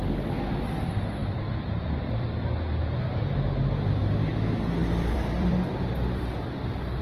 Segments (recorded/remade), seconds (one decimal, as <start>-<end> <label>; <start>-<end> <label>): 0.0-1.2 recorded; 1.2-2.6 remade; 2.6-4.8 recorded; 4.8-6.6 remade; 6.6-7.0 recorded